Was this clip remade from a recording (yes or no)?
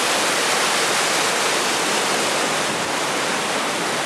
no